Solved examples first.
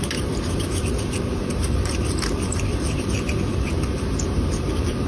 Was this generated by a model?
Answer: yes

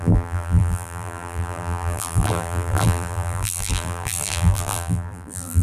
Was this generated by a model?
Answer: yes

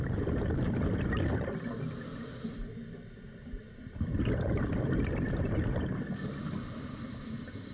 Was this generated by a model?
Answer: no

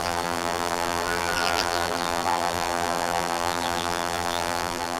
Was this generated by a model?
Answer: yes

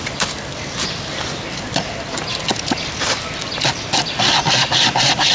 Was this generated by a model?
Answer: yes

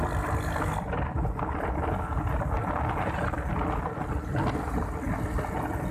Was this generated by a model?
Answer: no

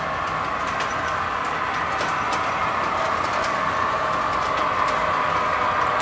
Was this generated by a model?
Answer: no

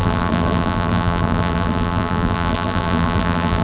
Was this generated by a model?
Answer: yes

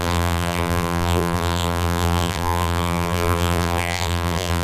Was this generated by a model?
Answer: yes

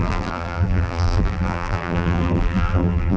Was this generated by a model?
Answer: yes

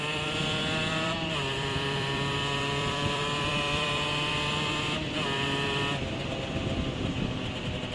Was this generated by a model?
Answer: yes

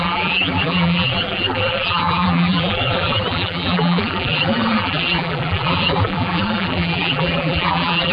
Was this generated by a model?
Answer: yes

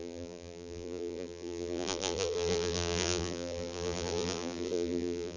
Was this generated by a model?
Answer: yes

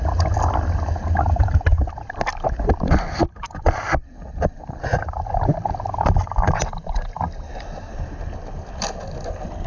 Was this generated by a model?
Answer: no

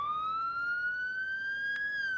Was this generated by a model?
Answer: no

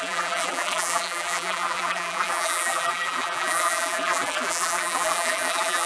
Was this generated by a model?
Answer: yes